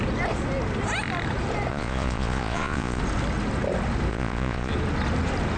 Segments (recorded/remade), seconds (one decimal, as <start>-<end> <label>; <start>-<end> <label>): 0.0-1.7 recorded; 1.7-3.0 remade; 3.0-4.1 recorded; 4.1-4.7 remade; 4.7-5.6 recorded